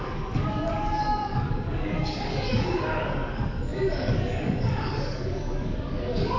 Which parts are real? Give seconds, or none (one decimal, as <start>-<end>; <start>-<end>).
none